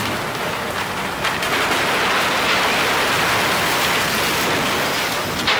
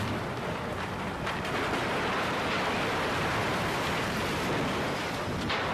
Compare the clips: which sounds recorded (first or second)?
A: first